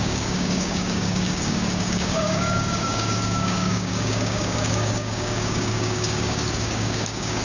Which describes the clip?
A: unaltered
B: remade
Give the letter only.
B